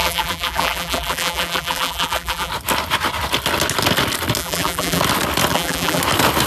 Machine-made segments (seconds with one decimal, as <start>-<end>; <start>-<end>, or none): 0.0-2.5; 4.4-5.0; 5.5-6.0